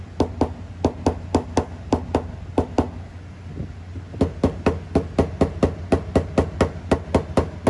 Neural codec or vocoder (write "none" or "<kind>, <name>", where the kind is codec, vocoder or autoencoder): none